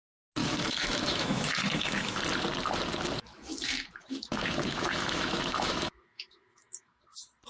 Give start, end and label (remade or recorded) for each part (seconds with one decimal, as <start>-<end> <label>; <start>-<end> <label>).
0.0-0.4 recorded; 0.4-2.2 remade; 2.2-3.3 recorded; 3.3-7.0 remade; 7.0-7.5 recorded

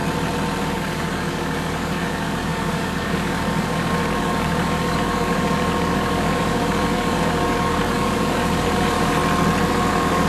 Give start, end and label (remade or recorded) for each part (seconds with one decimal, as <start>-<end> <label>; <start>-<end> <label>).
0.0-0.6 recorded; 0.6-9.2 remade; 9.2-9.9 recorded; 9.9-10.3 remade

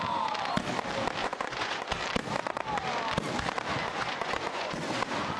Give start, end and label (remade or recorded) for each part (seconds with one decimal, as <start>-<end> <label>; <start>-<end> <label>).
0.0-1.2 recorded; 1.2-1.9 remade; 1.9-3.8 recorded; 3.8-4.8 remade; 4.8-5.4 recorded

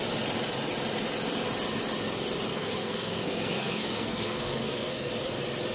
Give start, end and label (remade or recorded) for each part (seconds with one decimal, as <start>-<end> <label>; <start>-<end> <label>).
0.0-2.5 recorded; 2.5-5.1 remade; 5.1-5.7 recorded